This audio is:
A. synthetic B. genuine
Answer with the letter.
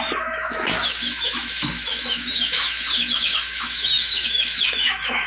A